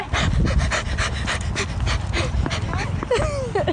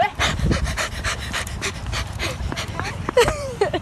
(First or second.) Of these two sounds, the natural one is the first